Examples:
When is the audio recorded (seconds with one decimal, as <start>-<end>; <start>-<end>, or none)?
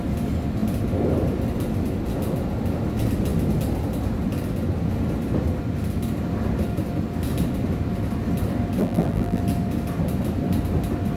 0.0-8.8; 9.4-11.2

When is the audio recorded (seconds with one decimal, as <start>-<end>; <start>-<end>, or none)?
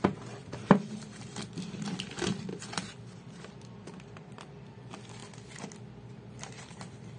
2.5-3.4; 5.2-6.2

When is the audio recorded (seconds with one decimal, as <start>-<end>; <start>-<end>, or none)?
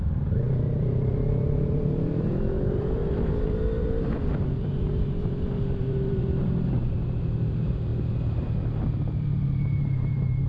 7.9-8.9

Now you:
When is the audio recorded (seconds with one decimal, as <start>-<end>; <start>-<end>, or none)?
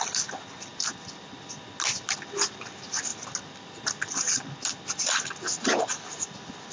0.0-6.7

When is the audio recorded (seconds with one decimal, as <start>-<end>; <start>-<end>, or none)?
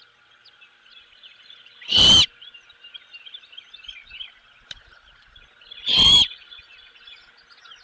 0.0-0.4; 5.1-7.8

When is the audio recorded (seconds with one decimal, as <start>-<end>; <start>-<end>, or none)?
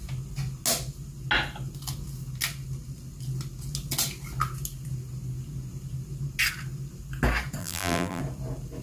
0.0-7.6; 8.2-8.8